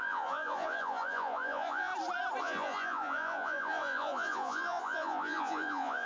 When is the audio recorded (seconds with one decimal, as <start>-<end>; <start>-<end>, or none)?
1.9-2.4